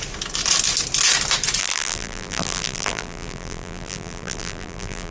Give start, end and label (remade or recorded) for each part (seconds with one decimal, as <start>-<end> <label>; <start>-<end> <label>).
0.0-1.6 recorded; 1.6-5.1 remade